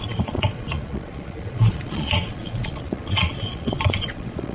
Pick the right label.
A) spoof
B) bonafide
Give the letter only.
A